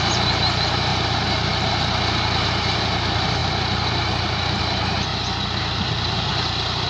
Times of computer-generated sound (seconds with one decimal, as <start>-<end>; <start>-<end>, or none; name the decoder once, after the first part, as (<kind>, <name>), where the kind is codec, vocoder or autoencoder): 0.0-3.4 (vocoder, BigVGAN v2); 4.6-5.1; 5.6-6.9